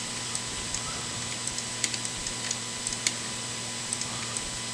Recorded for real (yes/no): yes